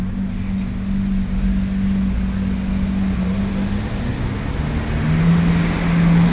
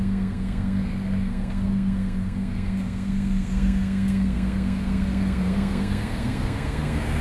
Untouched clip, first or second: first